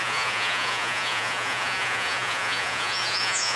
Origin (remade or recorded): remade